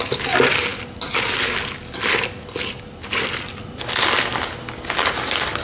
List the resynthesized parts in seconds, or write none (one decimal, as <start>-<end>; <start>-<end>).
none